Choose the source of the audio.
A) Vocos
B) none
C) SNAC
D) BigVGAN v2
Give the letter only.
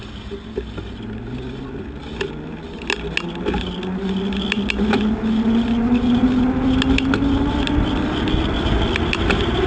B